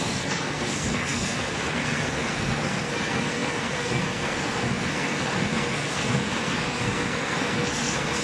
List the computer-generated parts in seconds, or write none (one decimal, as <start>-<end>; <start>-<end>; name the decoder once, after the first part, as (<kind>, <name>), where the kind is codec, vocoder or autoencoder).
0.0-8.2 (codec, SNAC)